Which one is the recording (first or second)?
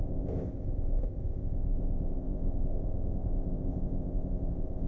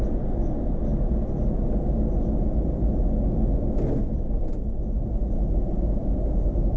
second